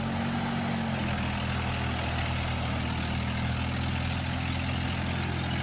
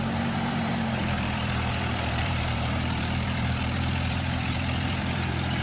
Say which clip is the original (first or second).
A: first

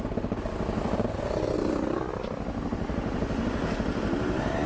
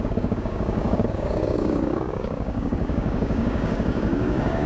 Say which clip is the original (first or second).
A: first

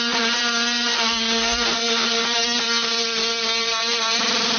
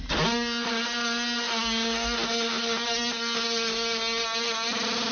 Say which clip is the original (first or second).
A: second